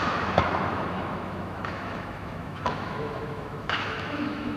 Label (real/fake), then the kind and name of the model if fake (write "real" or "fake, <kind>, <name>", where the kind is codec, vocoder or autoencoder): fake, autoencoder, DAC-VAE